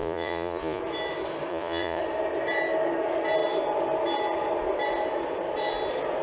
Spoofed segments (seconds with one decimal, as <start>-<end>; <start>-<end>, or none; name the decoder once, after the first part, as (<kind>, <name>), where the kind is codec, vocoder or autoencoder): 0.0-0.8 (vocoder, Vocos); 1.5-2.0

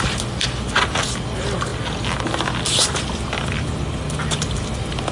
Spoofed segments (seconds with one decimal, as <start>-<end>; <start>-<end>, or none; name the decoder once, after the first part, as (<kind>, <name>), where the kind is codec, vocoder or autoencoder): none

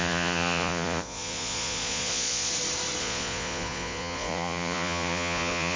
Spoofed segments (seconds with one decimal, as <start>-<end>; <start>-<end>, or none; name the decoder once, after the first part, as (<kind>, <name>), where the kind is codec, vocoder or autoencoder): 0.0-2.5 (vocoder, Vocos); 3.0-5.8

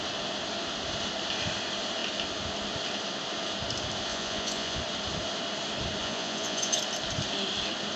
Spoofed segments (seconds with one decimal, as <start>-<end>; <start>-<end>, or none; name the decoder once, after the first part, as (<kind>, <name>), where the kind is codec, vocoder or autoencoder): 4.1-4.8 (vocoder, Vocos); 6.0-6.8